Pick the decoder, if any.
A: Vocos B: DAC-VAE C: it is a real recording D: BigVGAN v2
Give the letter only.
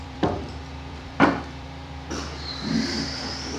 D